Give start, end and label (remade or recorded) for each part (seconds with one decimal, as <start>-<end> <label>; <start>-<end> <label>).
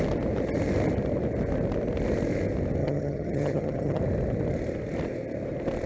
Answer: 0.0-2.8 recorded; 2.8-4.0 remade; 4.0-5.9 recorded